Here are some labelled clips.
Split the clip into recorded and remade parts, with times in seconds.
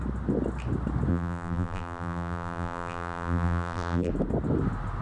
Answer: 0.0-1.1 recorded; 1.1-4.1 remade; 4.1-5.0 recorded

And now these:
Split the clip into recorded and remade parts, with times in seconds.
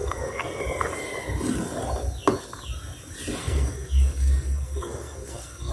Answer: 0.0-0.6 remade; 0.6-3.4 recorded; 3.4-5.7 remade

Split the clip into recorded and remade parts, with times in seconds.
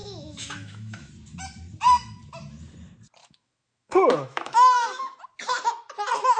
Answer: 0.0-1.1 remade; 1.1-3.2 recorded; 3.2-5.2 remade; 5.2-6.4 recorded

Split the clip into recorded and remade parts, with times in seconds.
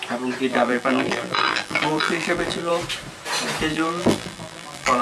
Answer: 0.0-0.5 recorded; 0.5-2.7 remade; 2.7-3.7 recorded; 3.7-5.0 remade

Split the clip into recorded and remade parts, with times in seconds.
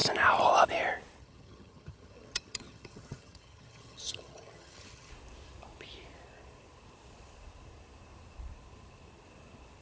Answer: 0.0-1.2 recorded; 1.2-5.1 remade; 5.1-9.8 recorded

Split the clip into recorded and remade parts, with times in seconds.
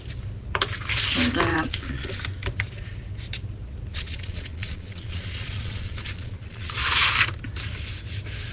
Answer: 0.0-1.5 recorded; 1.5-2.2 remade; 2.2-3.9 recorded; 3.9-7.1 remade; 7.1-8.5 recorded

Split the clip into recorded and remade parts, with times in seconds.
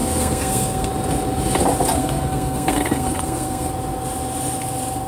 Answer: 0.0-0.9 remade; 0.9-2.0 recorded; 2.0-3.7 remade; 3.7-5.1 recorded